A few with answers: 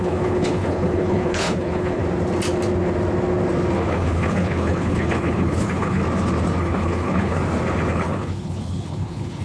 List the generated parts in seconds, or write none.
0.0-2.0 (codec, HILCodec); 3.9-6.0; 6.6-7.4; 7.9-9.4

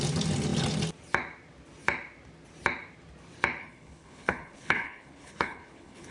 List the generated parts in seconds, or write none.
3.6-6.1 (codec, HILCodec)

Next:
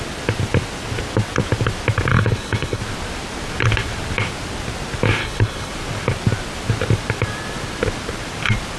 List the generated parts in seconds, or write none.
2.1-2.8 (codec, HILCodec); 5.2-5.7

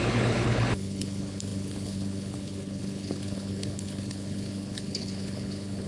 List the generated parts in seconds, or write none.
0.0-5.9 (codec, HILCodec)

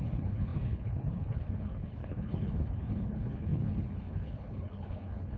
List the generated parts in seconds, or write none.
0.0-5.4 (codec, HILCodec)